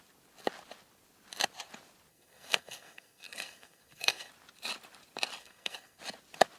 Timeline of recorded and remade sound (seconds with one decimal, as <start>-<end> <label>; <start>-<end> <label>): 0.0-2.1 recorded; 2.1-4.3 remade; 4.3-5.4 recorded; 5.4-6.0 remade; 6.0-6.6 recorded